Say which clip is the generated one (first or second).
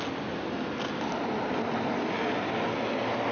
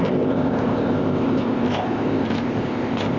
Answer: second